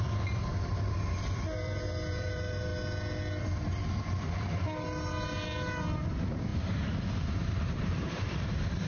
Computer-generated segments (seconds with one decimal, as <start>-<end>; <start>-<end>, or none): 0.0-2.7; 3.4-8.9